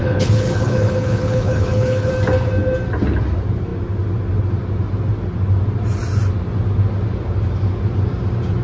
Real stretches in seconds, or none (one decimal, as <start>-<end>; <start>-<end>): 2.1-8.6